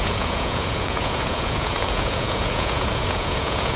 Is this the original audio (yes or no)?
no